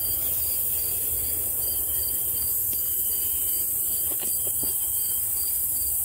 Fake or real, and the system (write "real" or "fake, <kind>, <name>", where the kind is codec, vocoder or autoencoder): fake, vocoder, BigVGAN v2